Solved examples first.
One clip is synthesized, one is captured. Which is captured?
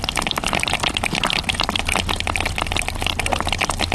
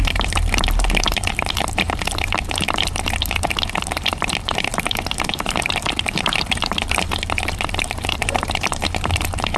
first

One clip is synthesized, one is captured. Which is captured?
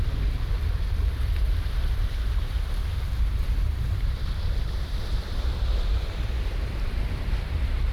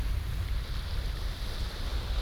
second